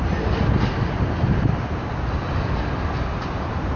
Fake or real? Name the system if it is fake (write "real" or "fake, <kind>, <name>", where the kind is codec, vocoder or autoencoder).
real